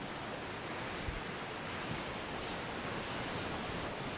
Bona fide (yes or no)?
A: yes